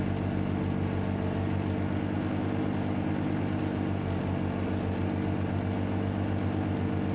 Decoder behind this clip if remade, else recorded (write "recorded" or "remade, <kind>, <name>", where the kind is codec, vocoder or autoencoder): recorded